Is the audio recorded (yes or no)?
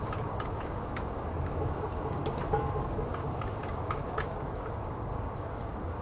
no